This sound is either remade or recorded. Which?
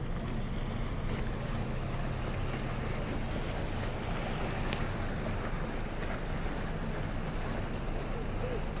recorded